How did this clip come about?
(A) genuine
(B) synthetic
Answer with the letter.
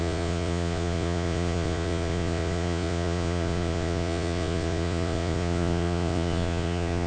B